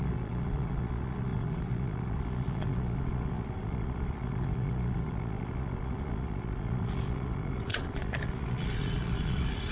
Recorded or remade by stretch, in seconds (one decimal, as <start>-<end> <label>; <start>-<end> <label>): 0.0-9.7 remade